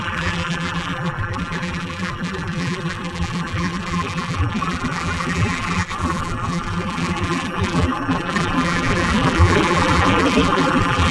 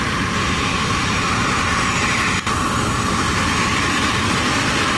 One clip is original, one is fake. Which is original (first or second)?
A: second